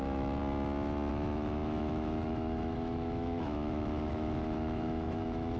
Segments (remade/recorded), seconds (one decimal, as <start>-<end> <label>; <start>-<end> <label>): 0.0-0.4 remade; 0.4-1.1 recorded; 1.1-5.6 remade